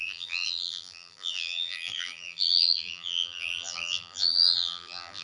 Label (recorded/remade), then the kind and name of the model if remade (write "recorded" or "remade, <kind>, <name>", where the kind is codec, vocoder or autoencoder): remade, vocoder, BigVGAN v2